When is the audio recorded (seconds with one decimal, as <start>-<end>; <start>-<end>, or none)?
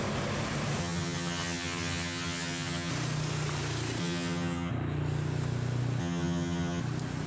0.0-0.8; 2.9-4.0; 4.7-6.0; 6.8-7.3